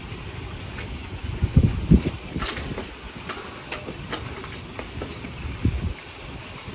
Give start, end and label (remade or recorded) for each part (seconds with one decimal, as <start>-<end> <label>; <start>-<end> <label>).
0.0-1.0 recorded; 1.0-1.6 remade; 1.6-6.7 recorded